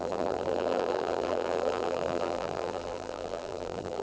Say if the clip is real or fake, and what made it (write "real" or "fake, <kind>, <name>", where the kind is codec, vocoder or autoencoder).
fake, vocoder, BigVGAN v2